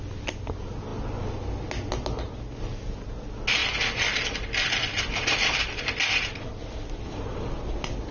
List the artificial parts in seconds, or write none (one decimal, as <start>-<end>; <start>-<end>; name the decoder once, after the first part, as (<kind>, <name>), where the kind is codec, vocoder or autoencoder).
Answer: 3.6-8.1 (vocoder, BigVGAN v2)